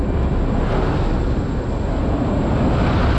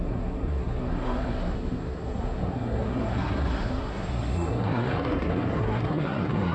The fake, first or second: second